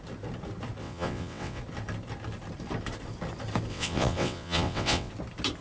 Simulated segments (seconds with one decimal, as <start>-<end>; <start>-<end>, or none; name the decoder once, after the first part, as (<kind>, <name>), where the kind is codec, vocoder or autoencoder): 0.8-1.6 (vocoder, WaveNeXt); 3.7-5.1